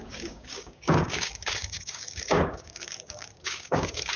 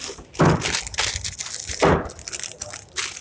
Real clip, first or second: second